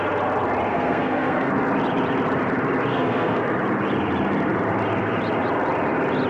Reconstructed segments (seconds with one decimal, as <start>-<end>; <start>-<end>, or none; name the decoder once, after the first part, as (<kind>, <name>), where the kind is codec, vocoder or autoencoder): 0.7-1.5 (codec, SNAC); 2.9-3.4